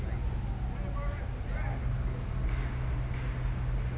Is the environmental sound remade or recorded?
recorded